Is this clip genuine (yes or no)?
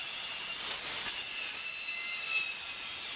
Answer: yes